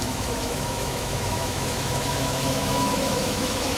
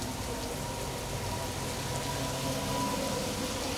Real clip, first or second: second